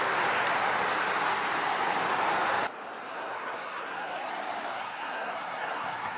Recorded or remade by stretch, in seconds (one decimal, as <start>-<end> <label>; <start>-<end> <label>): 0.0-3.1 recorded; 3.1-4.3 remade; 4.3-4.7 recorded; 4.7-6.2 remade